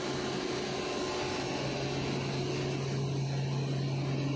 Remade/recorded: recorded